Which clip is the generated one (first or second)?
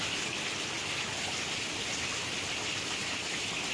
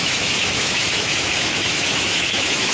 second